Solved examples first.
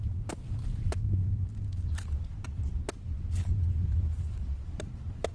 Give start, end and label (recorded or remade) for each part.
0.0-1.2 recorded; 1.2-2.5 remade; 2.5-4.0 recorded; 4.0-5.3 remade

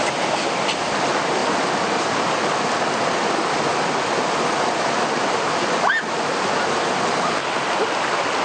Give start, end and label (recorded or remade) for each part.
0.0-8.4 recorded